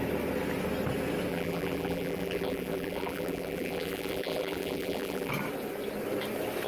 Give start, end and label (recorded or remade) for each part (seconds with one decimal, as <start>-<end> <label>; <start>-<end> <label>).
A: 0.0-1.3 recorded; 1.3-5.3 remade; 5.3-6.7 recorded